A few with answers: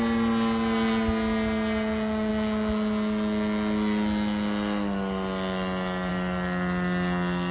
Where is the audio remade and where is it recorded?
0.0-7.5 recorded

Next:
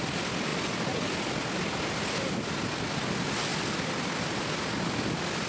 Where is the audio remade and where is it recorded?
0.0-5.5 recorded

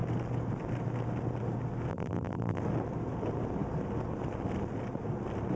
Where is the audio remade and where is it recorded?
0.0-1.9 recorded; 1.9-2.6 remade; 2.6-5.6 recorded